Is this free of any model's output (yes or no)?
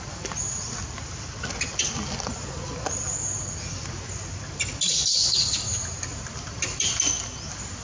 yes